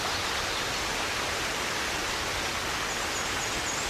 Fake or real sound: real